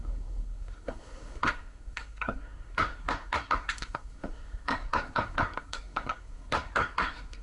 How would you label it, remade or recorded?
remade